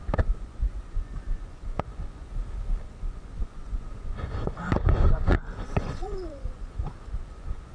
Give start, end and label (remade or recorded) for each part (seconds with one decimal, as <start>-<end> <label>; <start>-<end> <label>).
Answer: 0.0-2.3 remade; 2.3-2.8 recorded; 2.8-7.7 remade